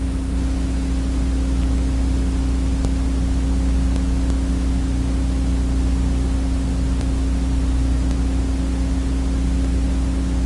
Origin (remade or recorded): recorded